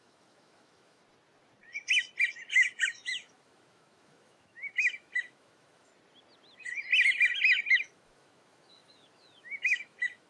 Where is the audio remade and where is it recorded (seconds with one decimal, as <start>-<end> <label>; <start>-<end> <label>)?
0.0-1.0 remade; 1.0-2.5 recorded; 2.5-5.9 remade; 5.9-7.7 recorded; 7.7-10.3 remade